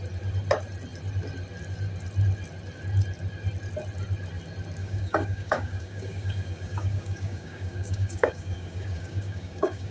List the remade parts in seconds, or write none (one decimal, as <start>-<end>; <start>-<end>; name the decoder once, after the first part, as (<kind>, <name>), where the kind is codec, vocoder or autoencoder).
4.8-9.9 (codec, DAC)